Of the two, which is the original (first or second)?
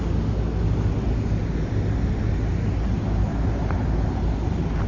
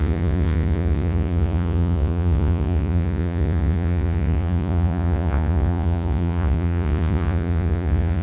first